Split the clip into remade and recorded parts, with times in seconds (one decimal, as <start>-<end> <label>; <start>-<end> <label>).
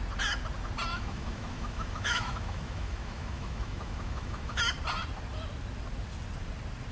0.0-0.9 recorded; 0.9-4.6 remade; 4.6-6.9 recorded